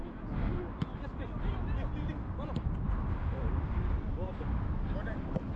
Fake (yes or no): no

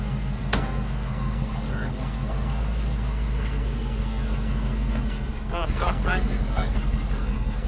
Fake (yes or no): yes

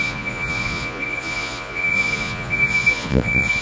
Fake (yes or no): yes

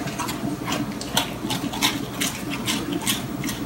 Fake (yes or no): no